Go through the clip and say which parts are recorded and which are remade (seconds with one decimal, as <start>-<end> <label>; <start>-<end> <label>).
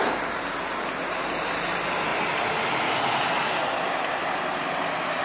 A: 0.0-2.1 recorded; 2.1-4.1 remade; 4.1-5.2 recorded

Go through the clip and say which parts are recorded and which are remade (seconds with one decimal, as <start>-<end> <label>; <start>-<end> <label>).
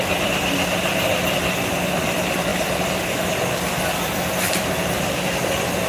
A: 0.0-5.9 recorded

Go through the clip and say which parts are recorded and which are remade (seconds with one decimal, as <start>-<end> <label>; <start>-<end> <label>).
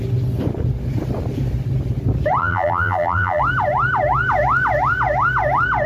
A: 0.0-2.4 recorded; 2.4-3.4 remade; 3.4-5.9 recorded